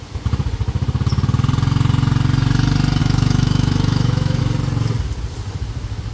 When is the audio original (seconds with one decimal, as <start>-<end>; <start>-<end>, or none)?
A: 0.0-3.0; 4.4-6.1